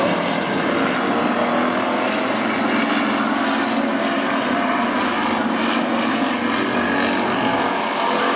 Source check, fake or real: real